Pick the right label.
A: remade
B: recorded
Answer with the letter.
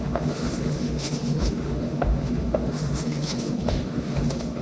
A